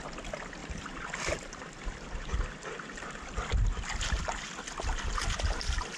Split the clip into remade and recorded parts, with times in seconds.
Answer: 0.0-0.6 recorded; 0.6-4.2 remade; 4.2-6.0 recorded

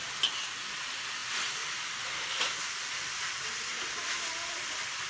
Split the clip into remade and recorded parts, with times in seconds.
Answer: 0.0-5.1 recorded

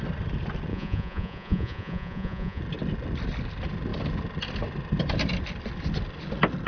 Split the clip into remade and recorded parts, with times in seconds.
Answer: 0.0-0.7 recorded; 0.7-2.6 remade; 2.6-6.7 recorded

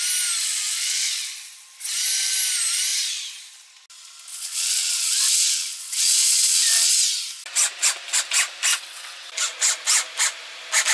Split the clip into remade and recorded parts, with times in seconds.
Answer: 0.0-0.4 recorded; 0.4-1.3 remade; 1.3-4.3 recorded; 4.3-6.9 remade; 6.9-8.7 recorded; 8.7-9.3 remade; 9.3-10.9 recorded

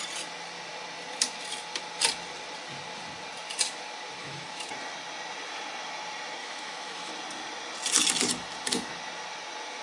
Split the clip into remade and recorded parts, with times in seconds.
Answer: 0.0-4.2 recorded; 4.2-4.7 remade; 4.7-6.4 recorded; 6.4-7.1 remade; 7.1-9.8 recorded

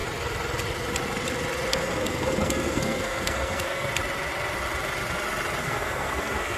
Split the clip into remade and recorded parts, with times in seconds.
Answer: 0.0-1.7 recorded; 1.7-3.9 remade; 3.9-5.6 recorded; 5.6-6.6 remade